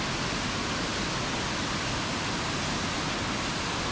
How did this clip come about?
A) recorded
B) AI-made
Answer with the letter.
A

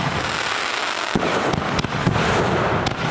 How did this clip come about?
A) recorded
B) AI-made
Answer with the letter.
A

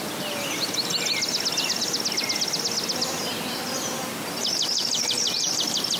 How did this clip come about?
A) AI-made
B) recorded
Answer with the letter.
B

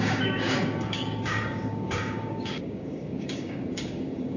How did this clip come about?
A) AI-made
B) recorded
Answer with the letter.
A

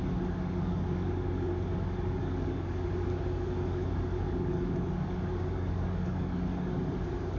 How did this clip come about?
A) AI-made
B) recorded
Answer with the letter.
A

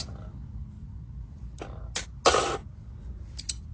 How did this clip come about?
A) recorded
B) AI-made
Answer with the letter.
A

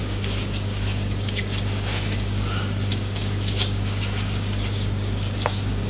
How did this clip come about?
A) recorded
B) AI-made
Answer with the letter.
B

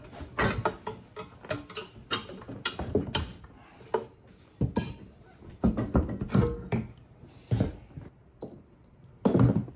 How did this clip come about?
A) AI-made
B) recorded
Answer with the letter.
B